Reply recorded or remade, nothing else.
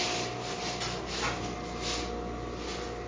recorded